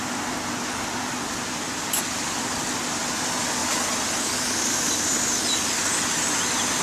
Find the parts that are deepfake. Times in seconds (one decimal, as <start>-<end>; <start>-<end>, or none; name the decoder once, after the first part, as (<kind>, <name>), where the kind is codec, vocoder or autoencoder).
none